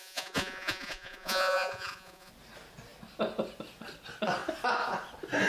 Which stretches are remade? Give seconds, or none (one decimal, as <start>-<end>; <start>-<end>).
0.0-2.3